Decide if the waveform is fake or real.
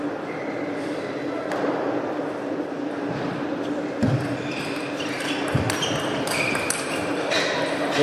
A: real